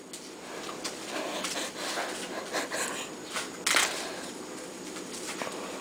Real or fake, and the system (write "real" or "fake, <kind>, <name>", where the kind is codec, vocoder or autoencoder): real